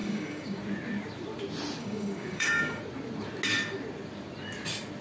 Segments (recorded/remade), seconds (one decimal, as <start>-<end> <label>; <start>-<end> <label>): 0.0-0.6 remade; 0.6-1.8 recorded; 1.8-2.8 remade; 2.8-5.0 recorded